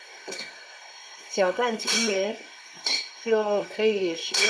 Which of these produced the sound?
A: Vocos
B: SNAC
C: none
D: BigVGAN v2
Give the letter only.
B